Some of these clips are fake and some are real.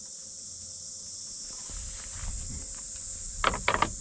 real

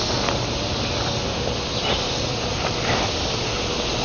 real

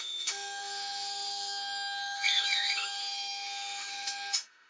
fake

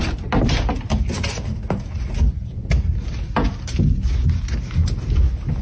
real